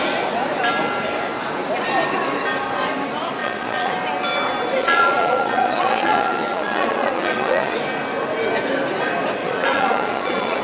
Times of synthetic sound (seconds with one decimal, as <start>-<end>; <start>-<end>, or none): 3.4-3.9; 4.8-7.8; 9.4-10.6